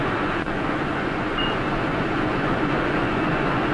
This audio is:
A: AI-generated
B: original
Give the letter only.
A